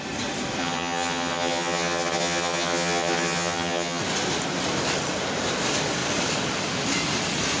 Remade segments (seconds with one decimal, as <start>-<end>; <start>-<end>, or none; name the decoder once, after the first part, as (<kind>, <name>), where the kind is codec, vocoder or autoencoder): 0.6-4.0 (vocoder, HiFi-GAN)